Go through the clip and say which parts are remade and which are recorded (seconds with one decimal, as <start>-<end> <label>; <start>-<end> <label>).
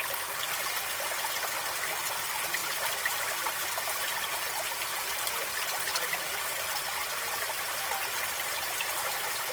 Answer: 0.0-2.6 recorded; 2.6-3.9 remade; 3.9-5.9 recorded; 5.9-6.5 remade; 6.5-7.0 recorded; 7.0-7.8 remade; 7.8-9.5 recorded